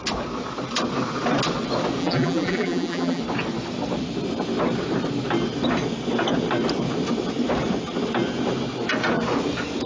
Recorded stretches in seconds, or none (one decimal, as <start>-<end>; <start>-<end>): 0.0-2.0; 3.2-9.9

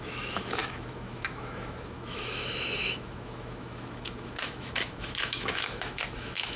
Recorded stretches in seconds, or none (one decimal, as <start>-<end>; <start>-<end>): none

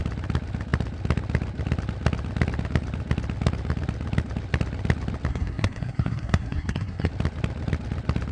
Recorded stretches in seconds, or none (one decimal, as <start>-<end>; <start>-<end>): 0.0-5.3; 7.1-8.3

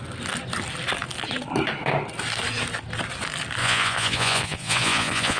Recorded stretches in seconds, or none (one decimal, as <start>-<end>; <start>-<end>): 0.0-3.6

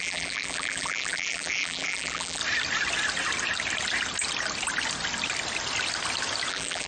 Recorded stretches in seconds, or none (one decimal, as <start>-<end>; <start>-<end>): 2.4-6.5

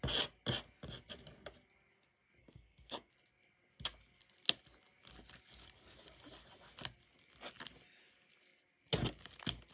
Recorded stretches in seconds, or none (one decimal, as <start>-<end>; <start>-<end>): 0.0-2.4; 3.1-9.7